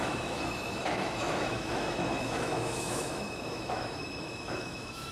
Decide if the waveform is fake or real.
fake